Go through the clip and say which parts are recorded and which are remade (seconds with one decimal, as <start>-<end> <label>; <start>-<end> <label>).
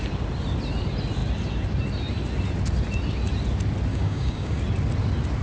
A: 0.0-3.9 recorded; 3.9-4.6 remade; 4.6-5.4 recorded